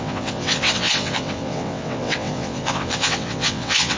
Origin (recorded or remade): remade